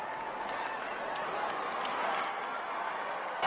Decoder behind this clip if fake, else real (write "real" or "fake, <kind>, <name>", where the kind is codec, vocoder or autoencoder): real